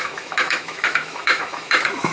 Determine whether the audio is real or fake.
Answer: fake